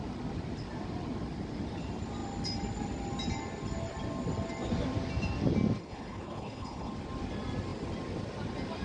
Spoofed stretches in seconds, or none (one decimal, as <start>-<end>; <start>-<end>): 5.8-6.9